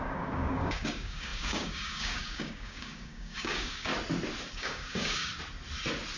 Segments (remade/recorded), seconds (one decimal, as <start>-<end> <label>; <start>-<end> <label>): 0.0-3.9 remade; 3.9-4.5 recorded; 4.5-5.3 remade; 5.3-6.2 recorded